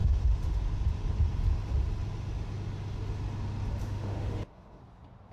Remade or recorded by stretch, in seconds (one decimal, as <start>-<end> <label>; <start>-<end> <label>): 0.0-0.6 remade; 0.6-3.8 recorded; 3.8-4.8 remade; 4.8-5.3 recorded